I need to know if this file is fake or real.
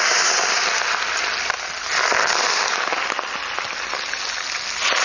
real